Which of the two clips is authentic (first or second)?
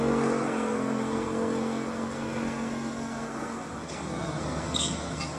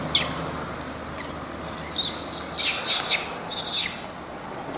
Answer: second